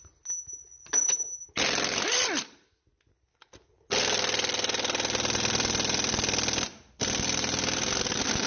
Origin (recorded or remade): recorded